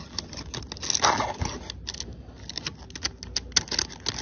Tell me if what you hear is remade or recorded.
recorded